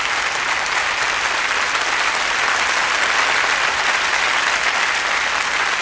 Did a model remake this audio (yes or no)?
no